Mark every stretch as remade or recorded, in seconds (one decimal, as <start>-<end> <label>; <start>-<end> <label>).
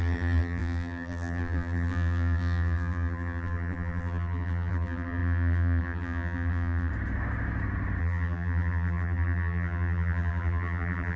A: 0.0-6.9 remade; 6.9-8.0 recorded; 8.0-11.2 remade